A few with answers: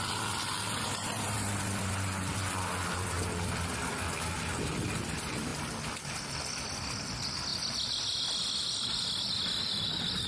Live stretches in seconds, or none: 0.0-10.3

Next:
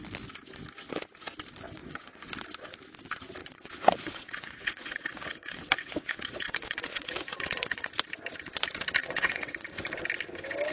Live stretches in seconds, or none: 0.0-1.8; 2.3-3.4; 7.9-9.0; 9.6-10.7

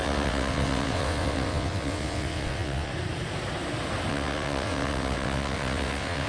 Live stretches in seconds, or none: 2.9-4.1

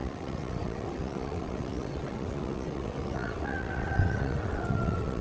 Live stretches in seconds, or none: none

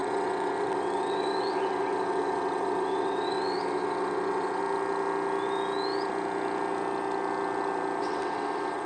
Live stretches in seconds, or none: 4.6-8.0